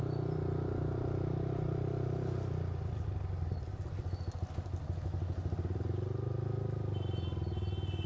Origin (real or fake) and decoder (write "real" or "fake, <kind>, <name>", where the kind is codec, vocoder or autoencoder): real